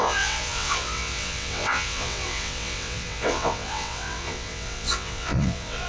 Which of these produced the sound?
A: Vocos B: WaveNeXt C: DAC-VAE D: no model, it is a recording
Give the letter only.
B